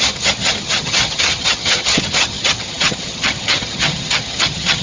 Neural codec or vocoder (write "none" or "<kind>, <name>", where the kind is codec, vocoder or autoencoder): vocoder, HiFi-GAN